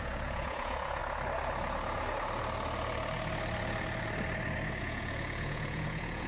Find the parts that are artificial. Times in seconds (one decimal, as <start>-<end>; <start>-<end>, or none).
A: 0.0-1.0; 4.8-6.3